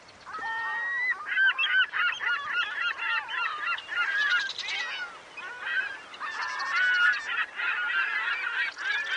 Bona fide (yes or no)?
yes